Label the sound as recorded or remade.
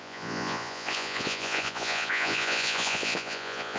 remade